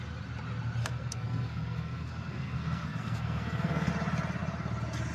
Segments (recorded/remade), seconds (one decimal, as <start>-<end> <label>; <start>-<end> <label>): 0.0-0.8 recorded; 0.8-3.9 remade; 3.9-5.1 recorded